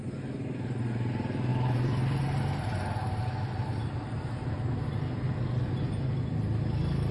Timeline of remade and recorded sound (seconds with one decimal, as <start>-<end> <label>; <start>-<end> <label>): 0.0-7.1 recorded